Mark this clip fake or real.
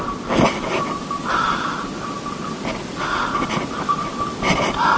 real